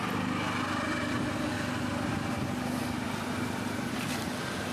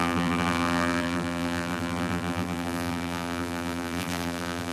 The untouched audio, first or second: first